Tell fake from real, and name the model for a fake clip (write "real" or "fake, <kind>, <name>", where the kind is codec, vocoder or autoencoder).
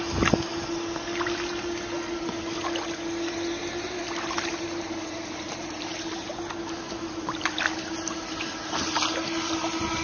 fake, vocoder, BigVGAN v2